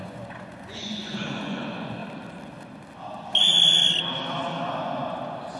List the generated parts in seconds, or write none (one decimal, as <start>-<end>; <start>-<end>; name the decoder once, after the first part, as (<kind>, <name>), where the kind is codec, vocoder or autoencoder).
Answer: 0.0-2.0 (vocoder, Vocos); 4.7-5.6